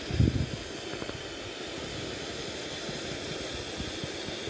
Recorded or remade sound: recorded